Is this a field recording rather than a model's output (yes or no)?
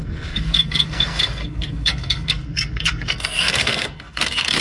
no